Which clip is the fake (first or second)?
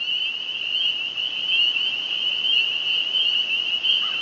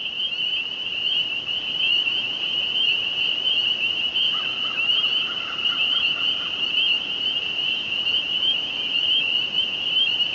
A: second